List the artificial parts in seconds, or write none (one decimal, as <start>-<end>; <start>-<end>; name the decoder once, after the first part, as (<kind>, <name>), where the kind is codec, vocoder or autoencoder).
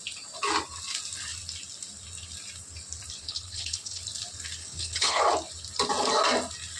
3.2-4.0 (codec, HILCodec); 4.6-5.2